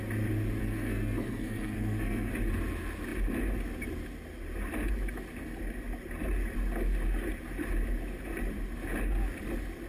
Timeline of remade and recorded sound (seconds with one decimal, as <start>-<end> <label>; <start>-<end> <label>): 0.0-0.6 recorded; 0.6-2.3 remade; 2.3-9.9 recorded